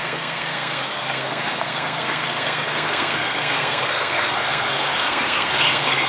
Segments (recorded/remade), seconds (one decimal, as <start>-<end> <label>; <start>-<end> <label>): 0.0-6.1 remade